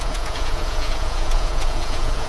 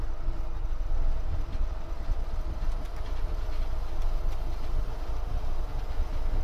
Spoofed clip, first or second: first